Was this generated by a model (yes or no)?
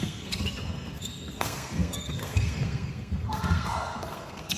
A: yes